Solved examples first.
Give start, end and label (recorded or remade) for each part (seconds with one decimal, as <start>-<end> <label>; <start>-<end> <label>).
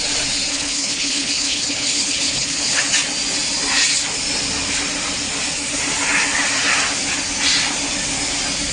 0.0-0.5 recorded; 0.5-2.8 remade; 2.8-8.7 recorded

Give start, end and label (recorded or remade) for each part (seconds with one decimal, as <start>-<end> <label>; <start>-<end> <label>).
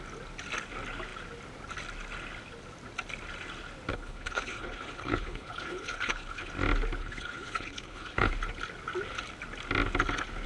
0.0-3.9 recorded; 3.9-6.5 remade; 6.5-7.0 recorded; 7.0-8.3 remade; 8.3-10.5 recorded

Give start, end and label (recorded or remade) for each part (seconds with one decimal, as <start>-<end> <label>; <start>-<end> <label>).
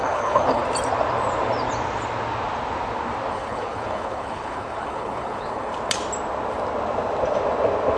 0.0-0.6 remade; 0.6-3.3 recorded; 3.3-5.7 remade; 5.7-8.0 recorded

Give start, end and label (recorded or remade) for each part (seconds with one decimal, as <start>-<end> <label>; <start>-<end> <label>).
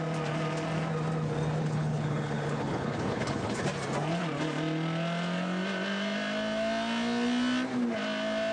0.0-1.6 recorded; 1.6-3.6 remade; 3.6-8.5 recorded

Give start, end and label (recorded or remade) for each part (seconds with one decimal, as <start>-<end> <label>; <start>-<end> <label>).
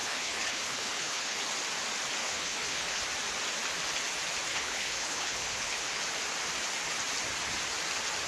0.0-1.4 remade; 1.4-2.2 recorded; 2.2-3.0 remade; 3.0-4.5 recorded; 4.5-6.0 remade; 6.0-8.3 recorded